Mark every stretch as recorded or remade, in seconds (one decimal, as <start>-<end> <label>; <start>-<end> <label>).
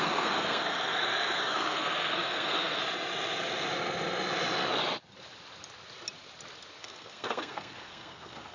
0.0-2.8 remade; 2.8-6.8 recorded; 6.8-8.5 remade